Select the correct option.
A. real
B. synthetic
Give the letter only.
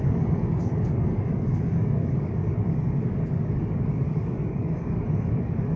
B